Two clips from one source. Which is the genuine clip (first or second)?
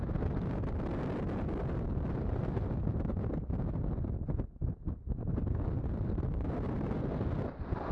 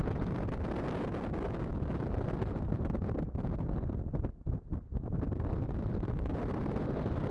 first